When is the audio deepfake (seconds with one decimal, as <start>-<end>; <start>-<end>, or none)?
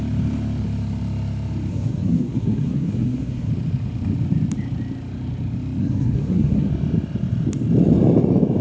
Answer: 1.7-3.5; 5.8-6.7